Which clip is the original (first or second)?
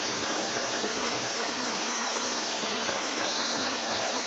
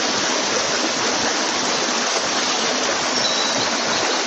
second